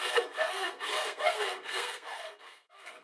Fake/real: fake